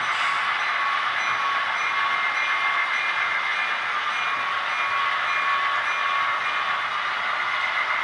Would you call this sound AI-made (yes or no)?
no